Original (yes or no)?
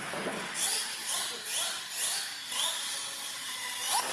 yes